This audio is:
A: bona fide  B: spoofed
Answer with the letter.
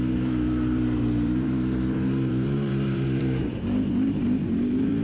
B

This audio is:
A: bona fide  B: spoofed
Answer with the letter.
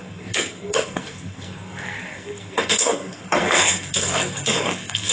B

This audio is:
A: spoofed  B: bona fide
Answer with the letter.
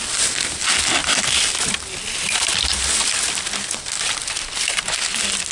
B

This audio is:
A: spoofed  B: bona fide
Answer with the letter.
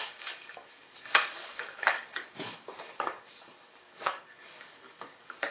A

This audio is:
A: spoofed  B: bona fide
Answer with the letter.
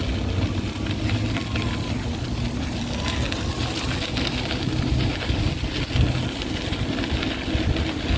B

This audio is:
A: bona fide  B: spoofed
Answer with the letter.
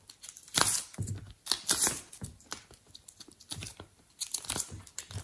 B